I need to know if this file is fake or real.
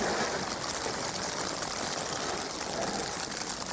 real